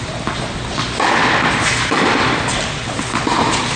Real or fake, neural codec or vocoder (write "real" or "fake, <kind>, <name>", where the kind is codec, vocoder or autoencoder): real